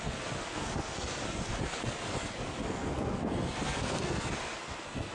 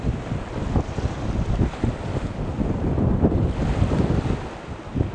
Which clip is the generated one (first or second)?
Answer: first